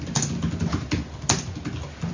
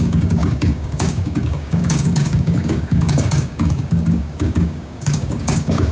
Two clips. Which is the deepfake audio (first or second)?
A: second